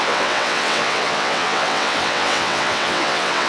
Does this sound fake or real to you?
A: fake